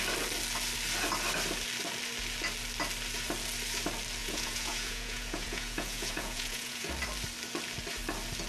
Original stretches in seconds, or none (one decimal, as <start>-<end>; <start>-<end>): 0.0-4.2; 6.9-8.5